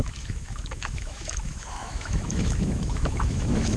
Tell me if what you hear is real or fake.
fake